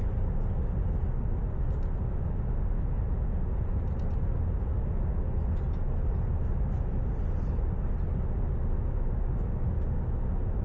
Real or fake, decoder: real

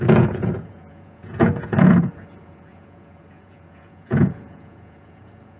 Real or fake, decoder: fake, vocoder, Vocos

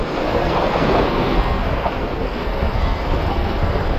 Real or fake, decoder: fake, codec, SNAC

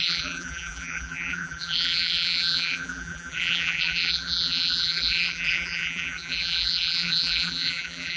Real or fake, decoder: fake, vocoder, BigVGAN v2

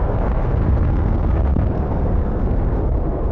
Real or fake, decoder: fake, codec, SNAC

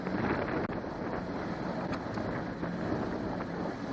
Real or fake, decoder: real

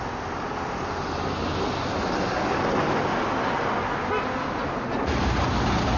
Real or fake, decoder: real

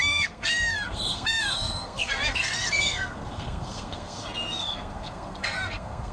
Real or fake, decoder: fake, codec, SNAC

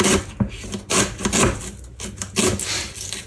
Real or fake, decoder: real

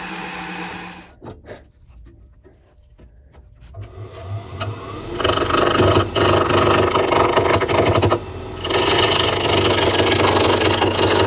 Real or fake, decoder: real